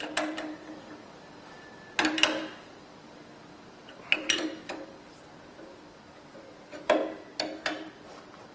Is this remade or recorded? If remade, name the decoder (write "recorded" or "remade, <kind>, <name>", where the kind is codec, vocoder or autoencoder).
recorded